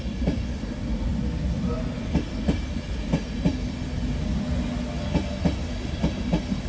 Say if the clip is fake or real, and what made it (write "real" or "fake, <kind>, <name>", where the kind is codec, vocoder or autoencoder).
real